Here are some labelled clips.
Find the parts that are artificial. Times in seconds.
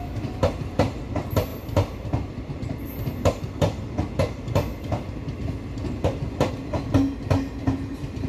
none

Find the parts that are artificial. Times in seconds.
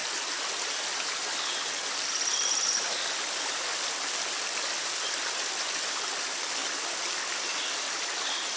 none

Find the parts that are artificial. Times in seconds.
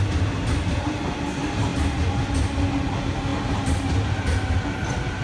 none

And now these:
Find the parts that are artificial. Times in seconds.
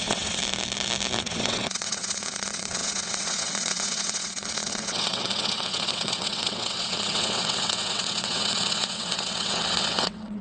0.0-0.4 (vocoder, WaveNeXt); 1.2-10.4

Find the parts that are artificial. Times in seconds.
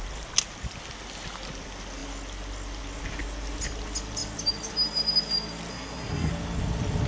5.7-6.3 (codec, SNAC)